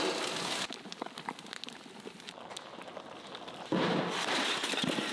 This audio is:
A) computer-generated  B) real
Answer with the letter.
B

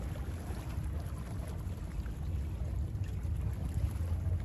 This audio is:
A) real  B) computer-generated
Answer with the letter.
A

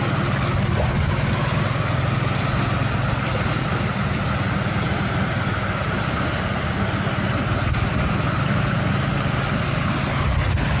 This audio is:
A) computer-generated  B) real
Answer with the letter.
B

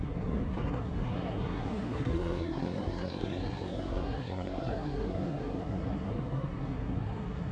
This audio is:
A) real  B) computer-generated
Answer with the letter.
B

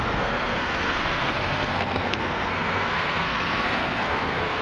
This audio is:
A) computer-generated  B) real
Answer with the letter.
A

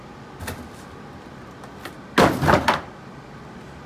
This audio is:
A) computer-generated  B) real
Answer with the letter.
B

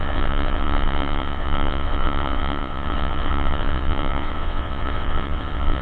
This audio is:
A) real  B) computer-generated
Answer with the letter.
B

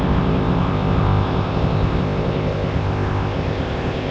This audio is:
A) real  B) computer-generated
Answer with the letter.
B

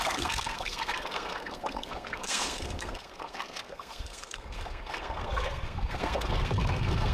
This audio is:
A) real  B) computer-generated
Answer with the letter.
B